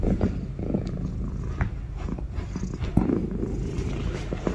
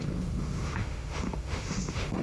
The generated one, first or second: second